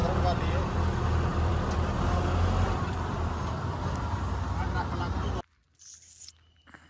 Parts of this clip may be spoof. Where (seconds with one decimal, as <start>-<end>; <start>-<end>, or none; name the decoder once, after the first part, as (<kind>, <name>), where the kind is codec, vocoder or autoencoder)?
1.3-4.1 (vocoder, BigVGAN v2)